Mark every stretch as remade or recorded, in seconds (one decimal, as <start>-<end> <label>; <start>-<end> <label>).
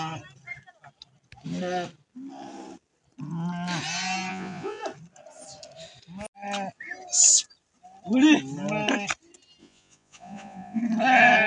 0.0-4.3 recorded; 4.3-4.8 remade; 4.8-9.6 recorded; 9.6-10.8 remade; 10.8-11.5 recorded